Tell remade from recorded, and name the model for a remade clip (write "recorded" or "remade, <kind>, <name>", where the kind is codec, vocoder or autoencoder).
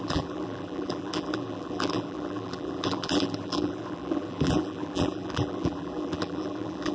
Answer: remade, vocoder, BigVGAN v2